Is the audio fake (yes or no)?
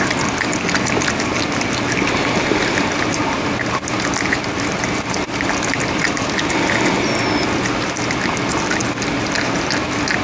no